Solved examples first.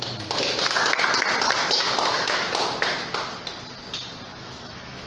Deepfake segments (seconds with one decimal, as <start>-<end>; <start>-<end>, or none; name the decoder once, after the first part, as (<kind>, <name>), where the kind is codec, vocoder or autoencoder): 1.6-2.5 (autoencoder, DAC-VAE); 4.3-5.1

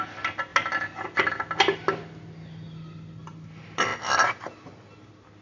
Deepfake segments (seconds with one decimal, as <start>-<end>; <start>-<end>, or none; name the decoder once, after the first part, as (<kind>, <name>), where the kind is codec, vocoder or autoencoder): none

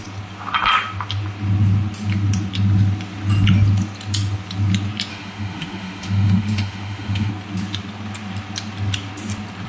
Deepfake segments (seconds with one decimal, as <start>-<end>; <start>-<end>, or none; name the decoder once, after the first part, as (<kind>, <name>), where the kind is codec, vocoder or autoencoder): 5.1-7.3 (autoencoder, DAC-VAE)

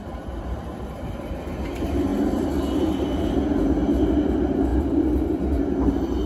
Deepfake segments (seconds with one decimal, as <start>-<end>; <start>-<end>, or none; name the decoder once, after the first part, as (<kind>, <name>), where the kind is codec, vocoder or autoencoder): none

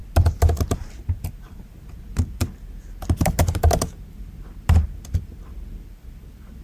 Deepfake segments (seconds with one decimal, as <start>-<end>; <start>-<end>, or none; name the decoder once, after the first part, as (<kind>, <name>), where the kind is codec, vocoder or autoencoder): none

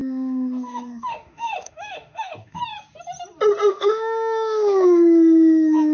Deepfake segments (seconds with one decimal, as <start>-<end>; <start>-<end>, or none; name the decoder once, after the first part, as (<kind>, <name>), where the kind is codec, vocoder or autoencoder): 0.0-2.6 (autoencoder, DAC-VAE); 3.7-5.9

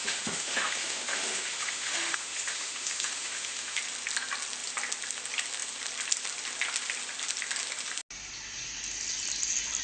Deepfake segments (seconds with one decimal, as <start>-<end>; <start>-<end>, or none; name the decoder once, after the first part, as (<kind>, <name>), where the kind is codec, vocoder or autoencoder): 0.0-3.8 (autoencoder, DAC-VAE)